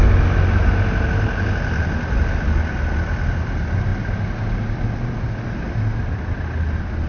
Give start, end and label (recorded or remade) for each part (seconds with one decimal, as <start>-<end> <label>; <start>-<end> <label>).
0.0-7.1 recorded